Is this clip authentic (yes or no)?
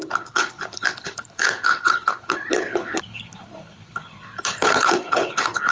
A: no